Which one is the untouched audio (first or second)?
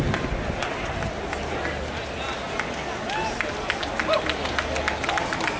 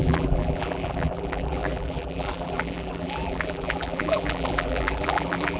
first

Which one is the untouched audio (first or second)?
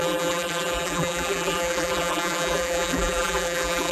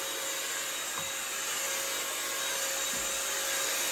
second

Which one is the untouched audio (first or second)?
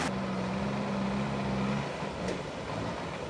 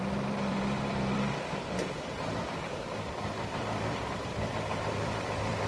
first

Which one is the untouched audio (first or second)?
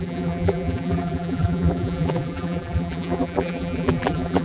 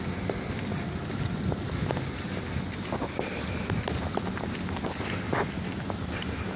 second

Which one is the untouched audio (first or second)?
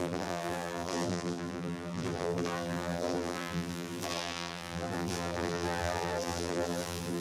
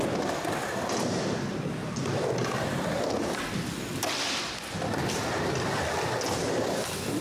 second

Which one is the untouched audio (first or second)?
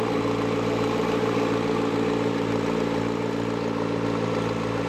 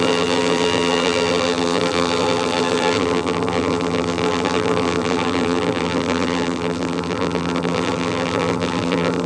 first